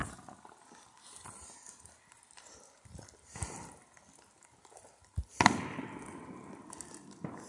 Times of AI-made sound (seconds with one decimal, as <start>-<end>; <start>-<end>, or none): none